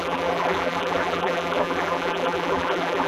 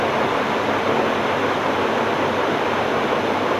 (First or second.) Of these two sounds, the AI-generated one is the first